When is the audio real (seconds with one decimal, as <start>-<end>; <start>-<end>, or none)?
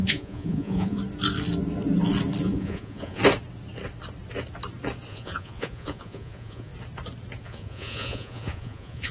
1.0-2.4; 3.2-5.1; 6.7-7.4